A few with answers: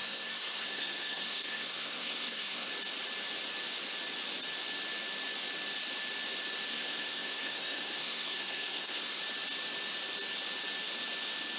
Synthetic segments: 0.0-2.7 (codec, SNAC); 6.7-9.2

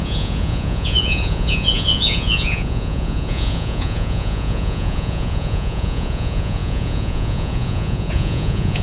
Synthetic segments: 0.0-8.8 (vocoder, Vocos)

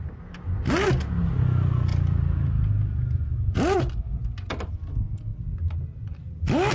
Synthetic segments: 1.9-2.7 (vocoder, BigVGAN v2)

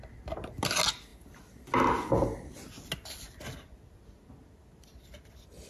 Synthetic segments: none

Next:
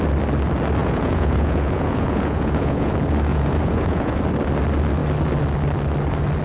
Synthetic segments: 0.8-2.9 (vocoder, Vocos); 3.3-4.2

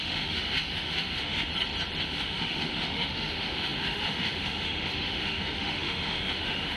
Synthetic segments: 0.0-1.5 (autoencoder, DAC-VAE); 2.0-6.8

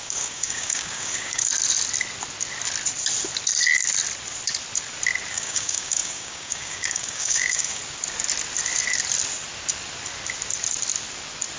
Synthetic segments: 0.0-1.5 (codec, DAC); 5.3-7.8